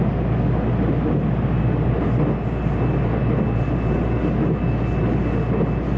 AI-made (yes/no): no